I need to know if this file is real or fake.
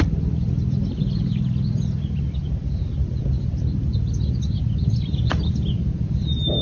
fake